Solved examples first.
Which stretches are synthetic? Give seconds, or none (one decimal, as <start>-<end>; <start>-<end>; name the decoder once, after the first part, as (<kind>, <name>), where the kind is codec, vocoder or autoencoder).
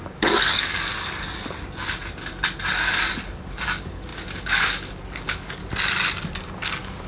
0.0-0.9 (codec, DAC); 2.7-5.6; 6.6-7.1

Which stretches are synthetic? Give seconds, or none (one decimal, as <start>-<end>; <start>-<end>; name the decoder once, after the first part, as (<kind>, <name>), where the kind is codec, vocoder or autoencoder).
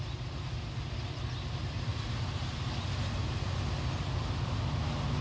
none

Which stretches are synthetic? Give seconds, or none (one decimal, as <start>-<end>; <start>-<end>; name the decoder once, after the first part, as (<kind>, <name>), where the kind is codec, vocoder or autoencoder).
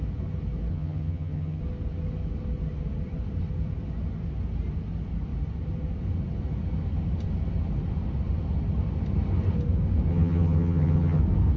0.7-1.6 (vocoder, HiFi-GAN); 10.1-11.2